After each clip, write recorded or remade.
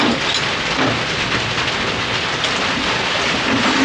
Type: recorded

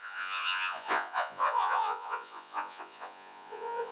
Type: remade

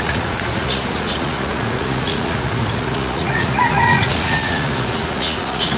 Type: remade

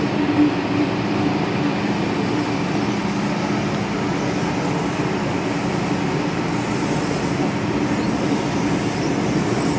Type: recorded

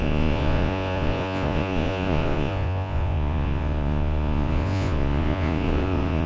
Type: remade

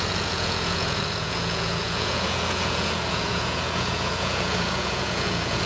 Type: remade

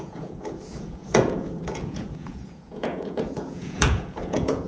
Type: remade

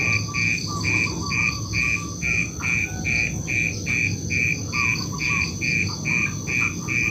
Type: recorded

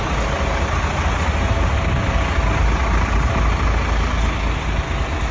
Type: recorded